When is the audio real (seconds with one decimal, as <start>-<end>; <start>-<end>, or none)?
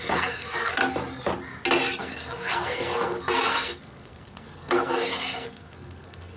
0.8-2.0